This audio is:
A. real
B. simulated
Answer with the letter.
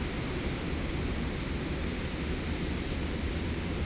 A